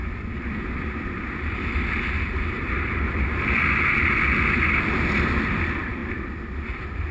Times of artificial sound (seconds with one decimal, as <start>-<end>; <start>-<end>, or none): 4.2-7.1